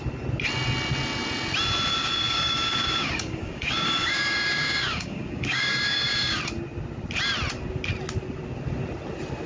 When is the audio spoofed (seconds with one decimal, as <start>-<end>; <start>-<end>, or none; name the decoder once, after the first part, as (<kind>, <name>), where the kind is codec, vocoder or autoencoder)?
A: 1.9-6.4 (codec, DAC)